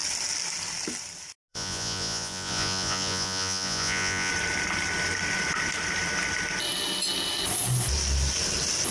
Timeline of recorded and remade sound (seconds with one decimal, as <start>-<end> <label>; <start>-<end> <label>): 0.0-1.5 recorded; 1.5-4.3 remade; 4.3-8.9 recorded